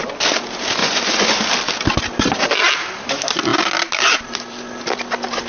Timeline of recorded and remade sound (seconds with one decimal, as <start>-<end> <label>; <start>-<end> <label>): 0.0-0.8 recorded; 0.8-1.4 remade; 1.4-5.5 recorded